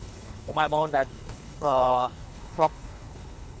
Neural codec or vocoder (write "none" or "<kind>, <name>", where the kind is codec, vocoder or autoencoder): codec, HILCodec